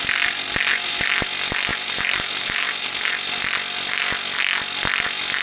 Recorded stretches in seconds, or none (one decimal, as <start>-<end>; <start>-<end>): 0.0-1.7; 3.1-5.4

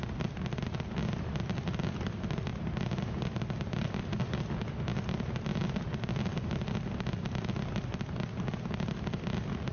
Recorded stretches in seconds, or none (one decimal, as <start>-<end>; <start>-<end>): 0.0-9.7

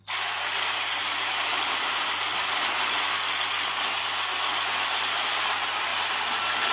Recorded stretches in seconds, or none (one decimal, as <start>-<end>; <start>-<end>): 0.0-1.0; 2.7-6.7

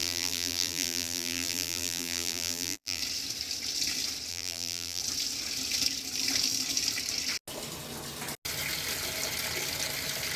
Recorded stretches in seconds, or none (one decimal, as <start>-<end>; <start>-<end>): 3.0-4.3; 5.0-10.4

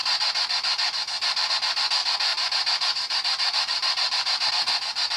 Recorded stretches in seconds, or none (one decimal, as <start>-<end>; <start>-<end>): 0.0-2.3; 4.5-5.2